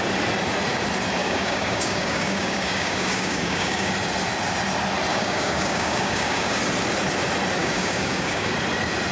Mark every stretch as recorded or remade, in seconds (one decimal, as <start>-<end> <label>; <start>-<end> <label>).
0.0-1.2 recorded; 1.2-3.9 remade; 3.9-5.1 recorded; 5.1-6.6 remade; 6.6-7.6 recorded; 7.6-8.5 remade; 8.5-9.1 recorded